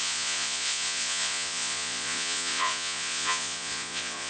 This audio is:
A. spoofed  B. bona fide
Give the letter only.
A